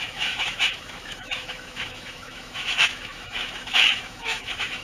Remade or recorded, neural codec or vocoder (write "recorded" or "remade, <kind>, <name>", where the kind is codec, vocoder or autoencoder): remade, autoencoder, DAC-VAE